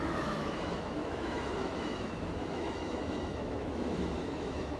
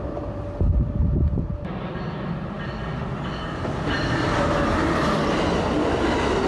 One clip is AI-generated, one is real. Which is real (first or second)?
second